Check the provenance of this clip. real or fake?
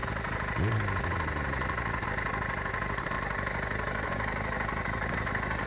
real